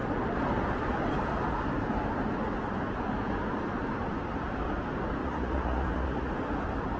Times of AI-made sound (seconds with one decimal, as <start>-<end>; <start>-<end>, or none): 5.2-6.3